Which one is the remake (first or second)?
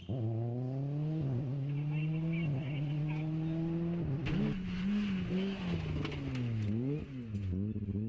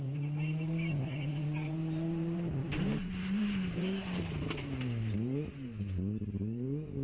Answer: second